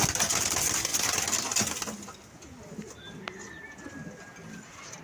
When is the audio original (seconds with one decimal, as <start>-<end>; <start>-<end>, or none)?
0.0-5.0